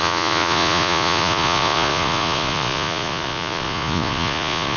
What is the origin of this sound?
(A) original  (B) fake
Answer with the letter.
B